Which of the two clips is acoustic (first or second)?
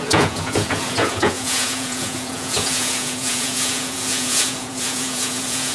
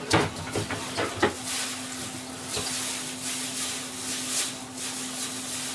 second